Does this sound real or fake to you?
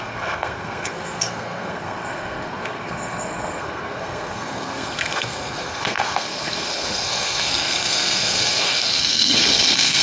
fake